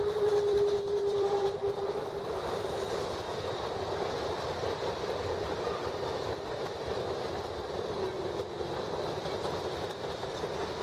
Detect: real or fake fake